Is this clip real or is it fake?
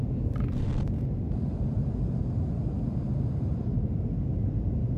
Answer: real